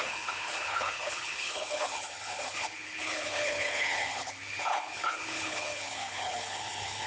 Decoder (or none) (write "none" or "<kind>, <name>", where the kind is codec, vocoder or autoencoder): codec, HILCodec